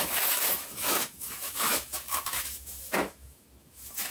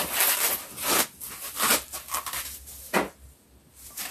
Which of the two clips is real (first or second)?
second